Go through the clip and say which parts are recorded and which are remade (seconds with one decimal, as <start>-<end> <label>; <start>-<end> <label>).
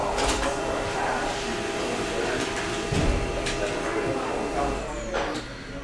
0.0-3.3 remade; 3.3-5.8 recorded